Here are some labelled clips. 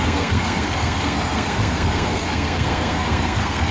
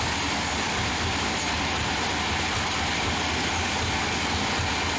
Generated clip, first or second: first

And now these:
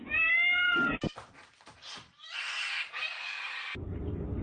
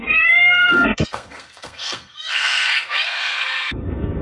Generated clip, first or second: second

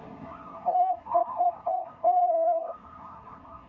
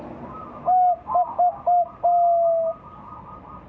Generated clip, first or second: first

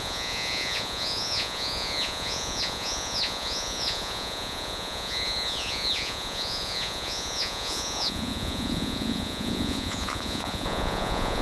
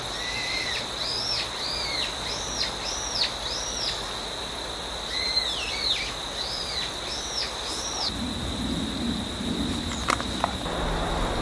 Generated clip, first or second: first